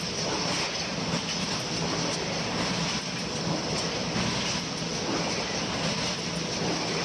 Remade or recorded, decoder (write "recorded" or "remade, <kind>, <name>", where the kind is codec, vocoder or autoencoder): recorded